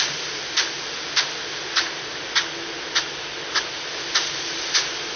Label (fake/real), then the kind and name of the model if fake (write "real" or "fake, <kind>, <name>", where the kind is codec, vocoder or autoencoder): real